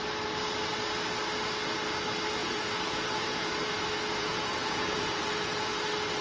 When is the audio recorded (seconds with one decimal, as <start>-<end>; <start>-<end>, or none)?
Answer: 0.0-2.4; 3.5-4.2; 5.8-6.2